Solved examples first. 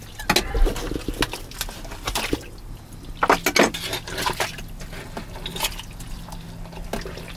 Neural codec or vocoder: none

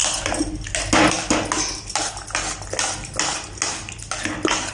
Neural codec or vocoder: none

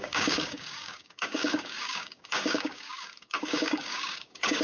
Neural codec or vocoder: codec, DAC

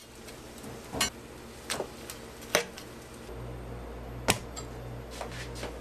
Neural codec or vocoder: none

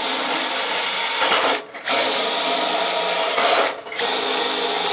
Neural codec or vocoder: none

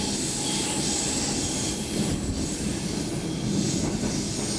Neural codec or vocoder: none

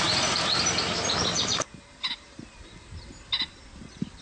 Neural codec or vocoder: none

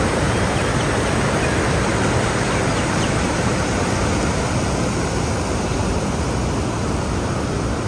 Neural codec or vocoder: none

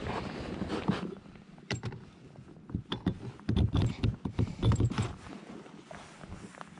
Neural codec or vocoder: none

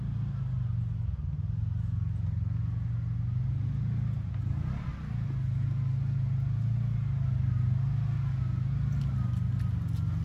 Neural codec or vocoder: none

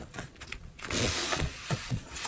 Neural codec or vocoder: vocoder, Vocos